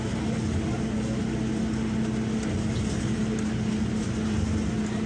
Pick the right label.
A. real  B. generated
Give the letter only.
A